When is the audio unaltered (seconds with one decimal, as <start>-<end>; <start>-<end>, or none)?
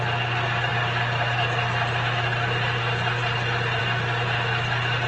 0.0-5.1